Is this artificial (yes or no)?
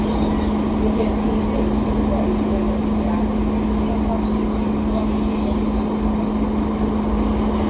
no